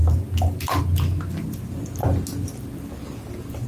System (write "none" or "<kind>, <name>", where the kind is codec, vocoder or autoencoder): none